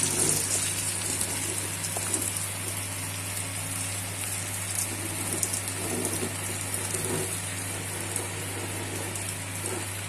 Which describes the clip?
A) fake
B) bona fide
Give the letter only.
B